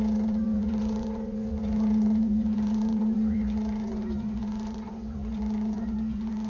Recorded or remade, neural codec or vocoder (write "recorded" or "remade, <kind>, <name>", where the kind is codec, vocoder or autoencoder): remade, vocoder, Vocos